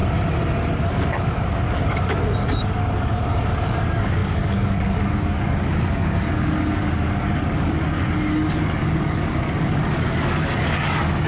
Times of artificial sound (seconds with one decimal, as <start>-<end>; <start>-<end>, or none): 0.9-11.3